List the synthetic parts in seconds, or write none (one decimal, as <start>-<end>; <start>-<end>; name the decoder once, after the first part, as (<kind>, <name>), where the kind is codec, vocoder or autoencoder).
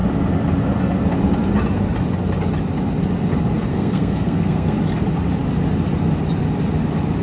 3.7-4.8 (codec, SNAC)